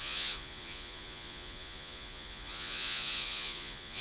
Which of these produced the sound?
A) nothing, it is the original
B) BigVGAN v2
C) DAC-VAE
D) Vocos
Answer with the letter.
D